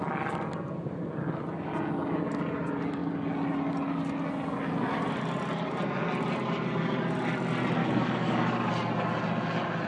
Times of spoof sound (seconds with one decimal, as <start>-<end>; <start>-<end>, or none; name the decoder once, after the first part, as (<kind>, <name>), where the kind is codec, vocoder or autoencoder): 7.8-8.7 (codec, DAC)